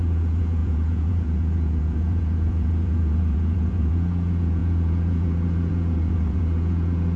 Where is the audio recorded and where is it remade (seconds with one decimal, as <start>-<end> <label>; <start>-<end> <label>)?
0.0-7.2 remade